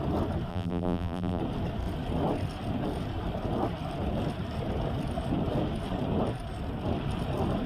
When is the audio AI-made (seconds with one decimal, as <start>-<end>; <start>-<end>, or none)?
0.5-1.4